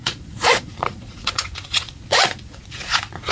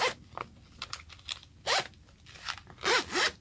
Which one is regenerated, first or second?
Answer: first